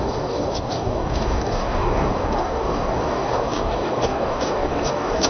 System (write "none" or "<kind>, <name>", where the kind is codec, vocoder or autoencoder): codec, DAC